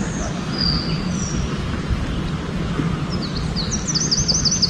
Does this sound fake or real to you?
real